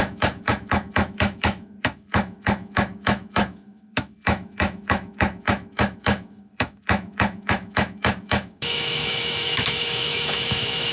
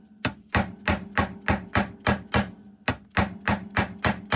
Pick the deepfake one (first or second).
first